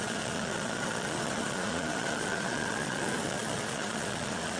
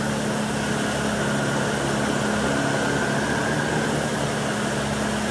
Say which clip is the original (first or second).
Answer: second